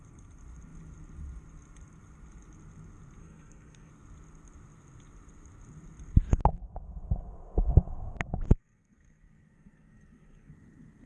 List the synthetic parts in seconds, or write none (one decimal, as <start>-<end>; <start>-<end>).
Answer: 3.2-3.9; 8.5-10.5